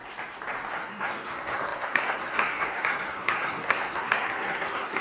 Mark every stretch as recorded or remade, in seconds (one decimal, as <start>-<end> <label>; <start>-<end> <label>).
0.0-0.7 recorded; 0.7-5.0 remade